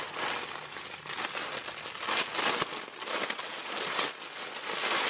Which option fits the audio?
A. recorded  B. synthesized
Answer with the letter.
A